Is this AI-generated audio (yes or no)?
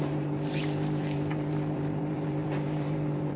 yes